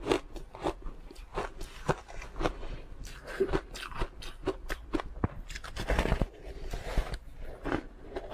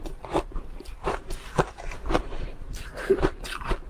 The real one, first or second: first